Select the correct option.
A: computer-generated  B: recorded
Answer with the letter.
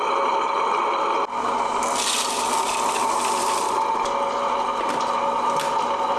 B